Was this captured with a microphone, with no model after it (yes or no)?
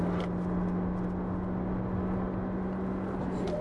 yes